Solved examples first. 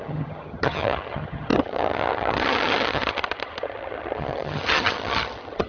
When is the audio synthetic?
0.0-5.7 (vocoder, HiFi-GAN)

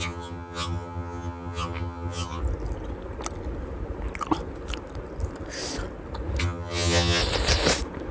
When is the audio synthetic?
0.0-2.4 (vocoder, HiFi-GAN); 6.4-7.2

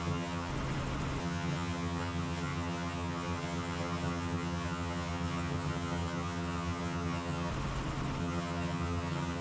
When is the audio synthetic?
0.0-0.5 (vocoder, HiFi-GAN); 1.2-7.5; 8.2-9.4

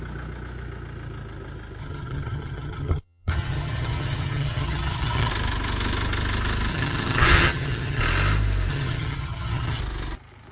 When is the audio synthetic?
1.8-5.3 (vocoder, HiFi-GAN); 6.7-8.0; 8.7-9.8

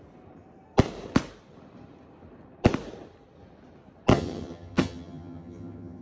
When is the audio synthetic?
4.1-6.0 (vocoder, HiFi-GAN)

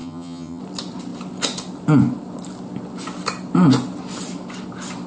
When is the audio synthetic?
0.0-0.6 (vocoder, HiFi-GAN)

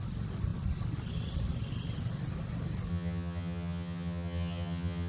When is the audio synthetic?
2.9-5.1 (vocoder, HiFi-GAN)